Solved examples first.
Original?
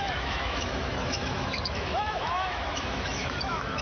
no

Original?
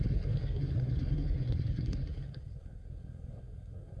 no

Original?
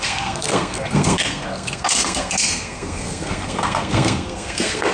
no